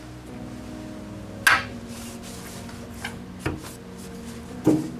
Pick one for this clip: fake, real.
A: real